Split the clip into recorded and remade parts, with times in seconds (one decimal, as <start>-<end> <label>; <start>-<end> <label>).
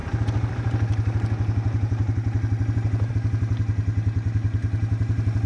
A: 0.0-5.5 recorded